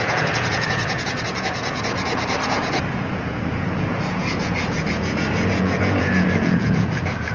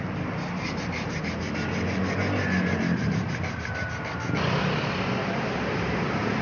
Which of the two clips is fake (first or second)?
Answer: first